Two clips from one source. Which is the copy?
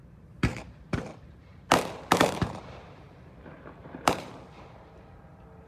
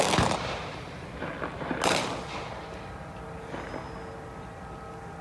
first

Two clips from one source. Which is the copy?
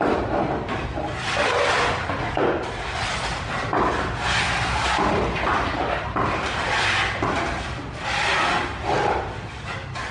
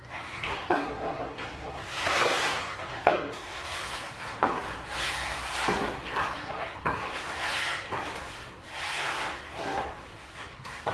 second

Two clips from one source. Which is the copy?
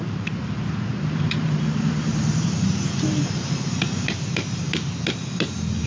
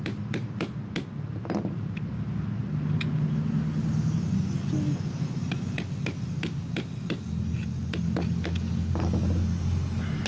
first